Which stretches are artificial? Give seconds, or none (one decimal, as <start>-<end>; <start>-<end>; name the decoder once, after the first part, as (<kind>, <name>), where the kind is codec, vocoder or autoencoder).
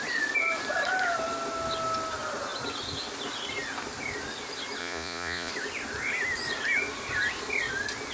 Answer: 4.8-5.5 (vocoder, Vocos)